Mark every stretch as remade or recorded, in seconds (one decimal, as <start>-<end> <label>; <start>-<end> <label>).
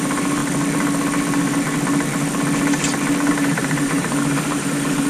0.0-0.4 remade; 0.4-3.3 recorded; 3.3-5.1 remade